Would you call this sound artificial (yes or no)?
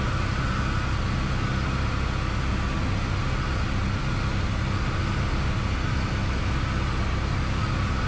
no